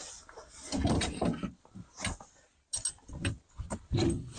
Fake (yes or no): no